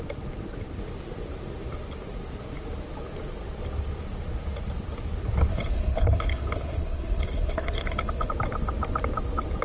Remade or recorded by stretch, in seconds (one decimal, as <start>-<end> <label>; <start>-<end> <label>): 0.0-5.5 recorded; 5.5-8.3 remade; 8.3-9.6 recorded